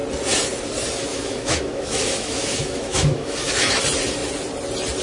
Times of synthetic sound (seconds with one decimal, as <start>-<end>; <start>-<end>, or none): 1.1-3.8